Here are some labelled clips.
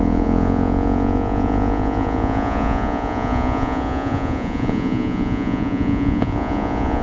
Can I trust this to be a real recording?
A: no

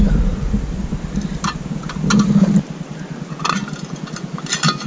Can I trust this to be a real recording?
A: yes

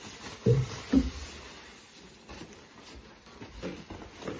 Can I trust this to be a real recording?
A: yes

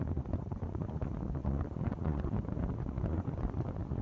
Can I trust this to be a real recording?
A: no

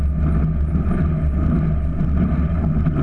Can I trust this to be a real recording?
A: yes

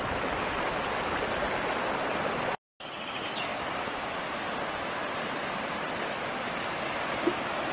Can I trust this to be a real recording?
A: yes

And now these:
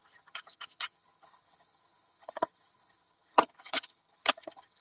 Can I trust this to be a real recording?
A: no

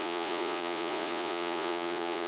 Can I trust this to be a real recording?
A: no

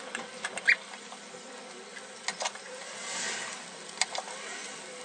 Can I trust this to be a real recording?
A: yes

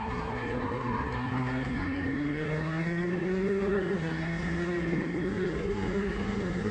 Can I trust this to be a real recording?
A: no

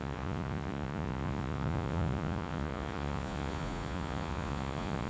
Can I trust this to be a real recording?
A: no